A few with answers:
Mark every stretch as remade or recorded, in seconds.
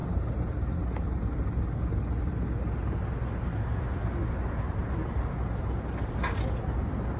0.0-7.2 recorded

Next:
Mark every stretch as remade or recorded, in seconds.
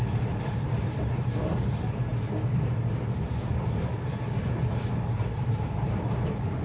0.0-2.1 remade; 2.1-5.2 recorded; 5.2-6.6 remade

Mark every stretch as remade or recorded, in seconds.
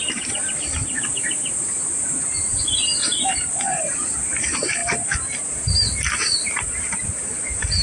0.0-7.8 remade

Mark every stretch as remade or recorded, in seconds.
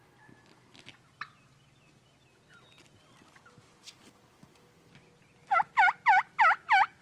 0.0-7.0 recorded